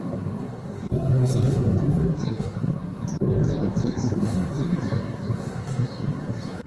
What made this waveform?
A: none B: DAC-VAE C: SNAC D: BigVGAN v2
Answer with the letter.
C